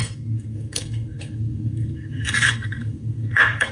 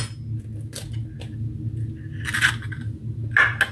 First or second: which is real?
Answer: second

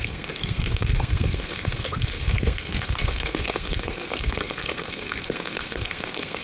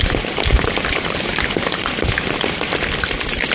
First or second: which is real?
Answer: second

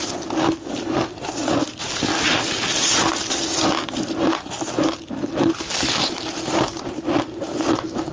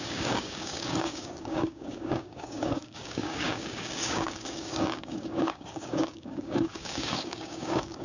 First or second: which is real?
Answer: first